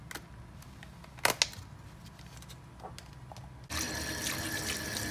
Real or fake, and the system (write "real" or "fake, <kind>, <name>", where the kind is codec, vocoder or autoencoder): real